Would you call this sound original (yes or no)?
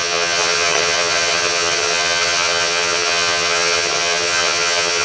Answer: no